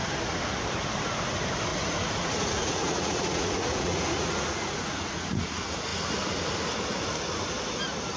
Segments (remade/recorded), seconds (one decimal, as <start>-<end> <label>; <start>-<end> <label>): 0.0-1.7 recorded; 1.7-5.5 remade; 5.5-8.2 recorded